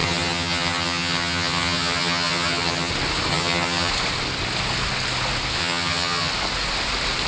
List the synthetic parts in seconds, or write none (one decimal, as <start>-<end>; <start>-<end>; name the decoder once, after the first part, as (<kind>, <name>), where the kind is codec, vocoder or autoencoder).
0.0-2.9 (vocoder, HiFi-GAN); 3.3-3.9; 5.6-6.3